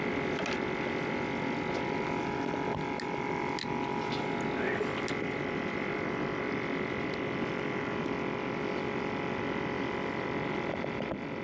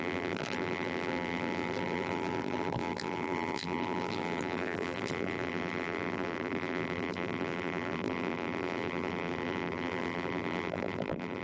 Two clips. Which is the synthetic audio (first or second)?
second